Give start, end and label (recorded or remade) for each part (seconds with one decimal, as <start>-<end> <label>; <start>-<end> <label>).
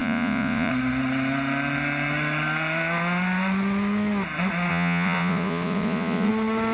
0.0-0.7 remade; 0.7-4.7 recorded; 4.7-6.3 remade; 6.3-6.7 recorded